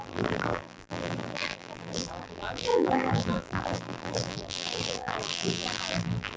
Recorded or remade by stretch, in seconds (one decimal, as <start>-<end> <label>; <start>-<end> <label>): 0.0-6.4 remade